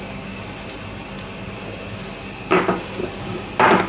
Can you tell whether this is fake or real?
real